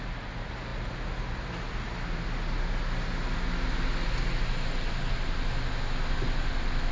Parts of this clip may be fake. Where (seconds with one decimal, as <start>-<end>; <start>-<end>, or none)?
none